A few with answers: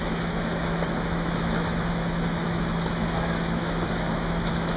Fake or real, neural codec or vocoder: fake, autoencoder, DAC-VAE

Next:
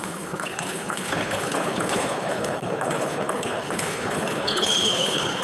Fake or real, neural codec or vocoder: fake, codec, HILCodec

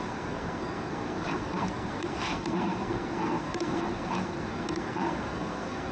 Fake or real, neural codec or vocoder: fake, codec, SNAC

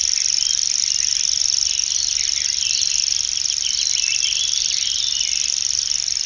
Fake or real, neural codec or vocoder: fake, vocoder, BigVGAN v2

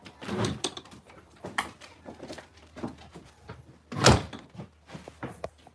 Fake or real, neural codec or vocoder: real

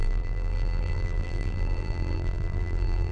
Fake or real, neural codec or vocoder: fake, vocoder, BigVGAN v2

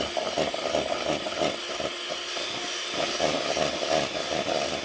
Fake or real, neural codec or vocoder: real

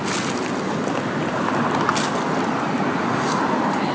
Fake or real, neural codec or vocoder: real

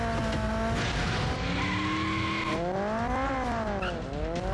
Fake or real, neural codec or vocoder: real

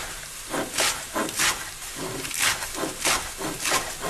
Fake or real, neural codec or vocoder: real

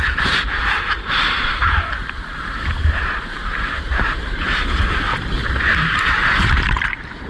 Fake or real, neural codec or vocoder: fake, vocoder, BigVGAN v2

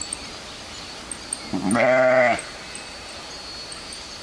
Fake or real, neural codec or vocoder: real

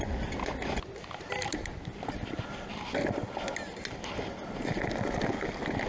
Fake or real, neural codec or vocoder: real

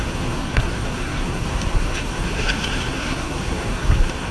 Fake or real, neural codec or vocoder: fake, codec, SNAC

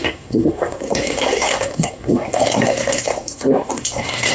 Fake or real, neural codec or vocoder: fake, codec, SNAC